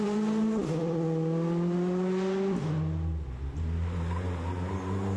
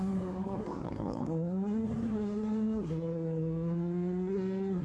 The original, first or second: first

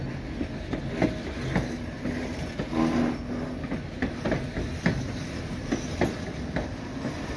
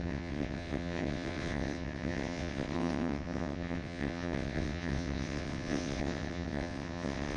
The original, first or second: first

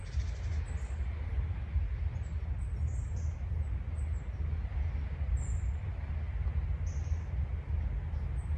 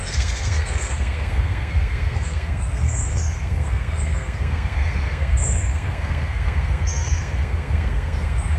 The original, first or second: first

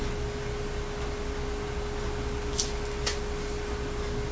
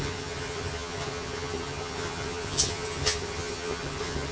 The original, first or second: first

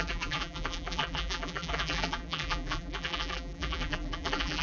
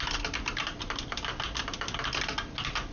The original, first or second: second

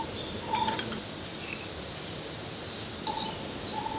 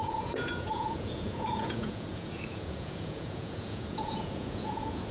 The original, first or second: first